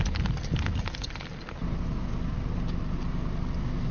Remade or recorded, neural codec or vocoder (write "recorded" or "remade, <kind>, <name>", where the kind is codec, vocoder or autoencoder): recorded